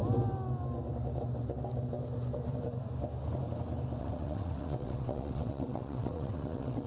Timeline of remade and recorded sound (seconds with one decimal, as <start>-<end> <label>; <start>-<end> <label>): 0.0-4.0 recorded; 4.0-6.9 remade